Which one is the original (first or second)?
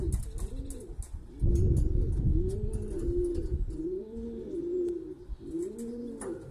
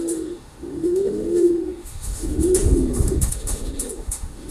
first